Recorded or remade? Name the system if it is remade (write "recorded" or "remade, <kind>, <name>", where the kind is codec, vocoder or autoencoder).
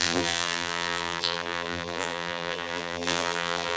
remade, vocoder, BigVGAN v2